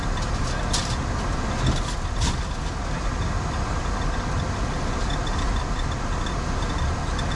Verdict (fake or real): real